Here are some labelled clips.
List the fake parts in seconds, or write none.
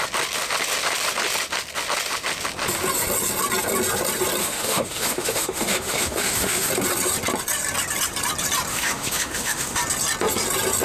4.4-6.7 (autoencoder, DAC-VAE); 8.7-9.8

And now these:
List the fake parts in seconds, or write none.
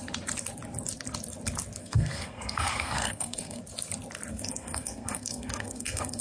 1.8-3.6 (codec, SNAC); 4.3-6.2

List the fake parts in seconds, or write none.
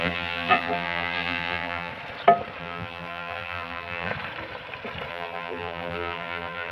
0.0-1.9 (vocoder, BigVGAN v2); 2.6-4.1; 5.1-6.7